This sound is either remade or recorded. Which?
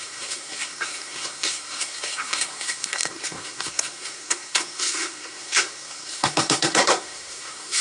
remade